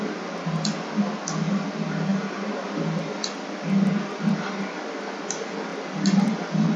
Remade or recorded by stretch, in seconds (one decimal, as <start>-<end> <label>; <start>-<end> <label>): 0.0-6.8 recorded